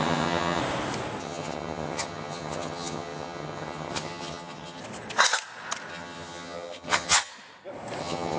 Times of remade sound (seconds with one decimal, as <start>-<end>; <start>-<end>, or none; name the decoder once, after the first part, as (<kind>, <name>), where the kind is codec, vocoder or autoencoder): 0.0-0.6 (vocoder, HiFi-GAN); 1.2-4.8; 5.9-7.3; 8.0-8.4